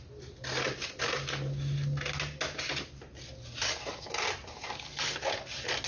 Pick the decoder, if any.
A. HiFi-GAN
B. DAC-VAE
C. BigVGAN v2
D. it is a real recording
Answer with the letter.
D